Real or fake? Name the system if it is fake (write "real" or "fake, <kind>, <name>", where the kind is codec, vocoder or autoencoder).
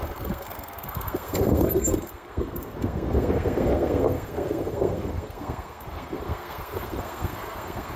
fake, codec, SNAC